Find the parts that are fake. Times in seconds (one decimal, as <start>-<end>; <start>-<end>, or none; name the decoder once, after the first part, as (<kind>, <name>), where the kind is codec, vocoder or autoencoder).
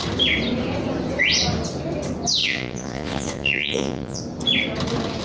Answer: 2.4-4.2 (vocoder, Vocos)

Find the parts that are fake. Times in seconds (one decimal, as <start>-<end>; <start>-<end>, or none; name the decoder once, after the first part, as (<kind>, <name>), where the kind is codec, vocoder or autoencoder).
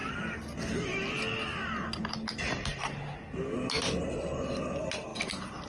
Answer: 5.1-5.7 (vocoder, BigVGAN v2)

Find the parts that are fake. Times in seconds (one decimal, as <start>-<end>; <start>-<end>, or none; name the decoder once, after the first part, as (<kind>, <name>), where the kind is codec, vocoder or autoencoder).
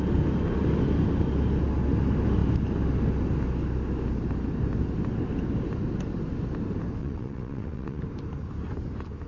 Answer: 7.0-8.0 (vocoder, WaveNeXt)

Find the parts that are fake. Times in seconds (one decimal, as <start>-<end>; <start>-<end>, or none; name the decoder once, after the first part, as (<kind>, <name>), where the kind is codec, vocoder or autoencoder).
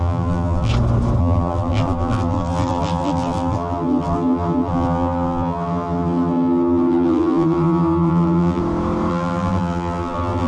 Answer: 0.0-0.7 (vocoder, BigVGAN v2); 1.2-8.6; 9.1-10.5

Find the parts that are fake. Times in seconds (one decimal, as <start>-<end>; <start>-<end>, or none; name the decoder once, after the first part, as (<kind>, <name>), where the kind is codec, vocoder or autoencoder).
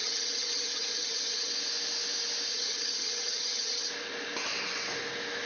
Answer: 0.0-1.5 (vocoder, HiFi-GAN); 2.5-3.9